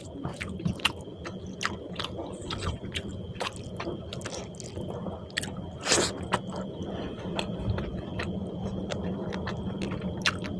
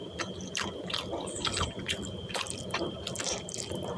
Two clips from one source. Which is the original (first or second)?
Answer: first